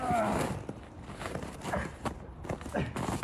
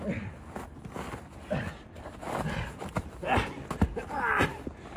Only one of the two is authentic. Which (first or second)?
second